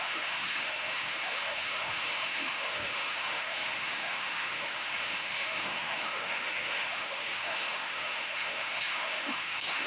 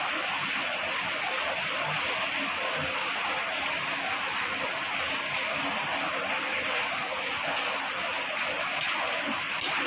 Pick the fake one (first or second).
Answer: first